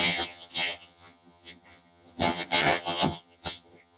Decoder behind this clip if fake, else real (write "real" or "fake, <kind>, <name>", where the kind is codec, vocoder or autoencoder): fake, vocoder, HiFi-GAN